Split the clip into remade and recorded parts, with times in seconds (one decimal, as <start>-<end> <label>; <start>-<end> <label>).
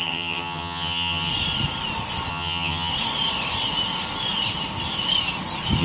0.0-1.3 remade; 1.3-2.3 recorded; 2.3-2.9 remade; 2.9-5.8 recorded